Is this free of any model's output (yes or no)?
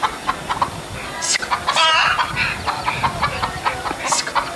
yes